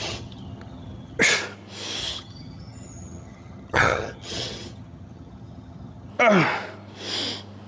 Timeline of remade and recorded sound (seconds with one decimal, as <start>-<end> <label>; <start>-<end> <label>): 0.0-1.2 remade; 1.2-2.0 recorded; 2.0-6.1 remade; 6.1-7.7 recorded